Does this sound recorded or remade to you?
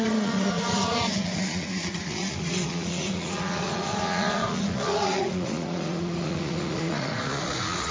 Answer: remade